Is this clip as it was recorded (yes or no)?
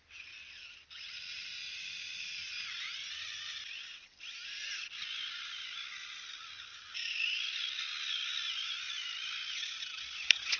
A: yes